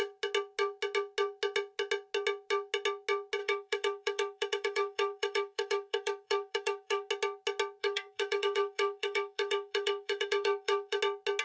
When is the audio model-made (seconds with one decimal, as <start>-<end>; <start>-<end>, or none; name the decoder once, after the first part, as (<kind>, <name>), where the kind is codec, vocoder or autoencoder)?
3.4-7.1 (autoencoder, DAC-VAE); 7.8-11.0